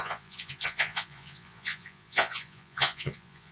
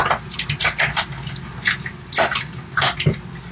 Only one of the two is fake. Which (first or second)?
first